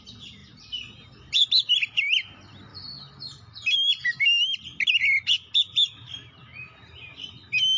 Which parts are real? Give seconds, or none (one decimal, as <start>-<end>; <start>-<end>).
0.0-7.8